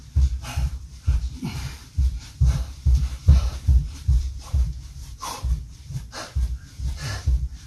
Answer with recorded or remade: remade